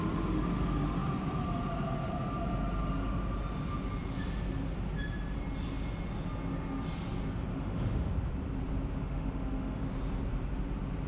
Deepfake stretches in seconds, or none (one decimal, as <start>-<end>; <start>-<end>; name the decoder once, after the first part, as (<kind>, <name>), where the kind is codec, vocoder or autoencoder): 7.5-8.1 (autoencoder, DAC-VAE); 9.0-9.8